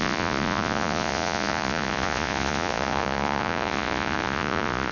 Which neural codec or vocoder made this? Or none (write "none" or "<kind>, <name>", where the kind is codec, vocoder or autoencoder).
vocoder, Vocos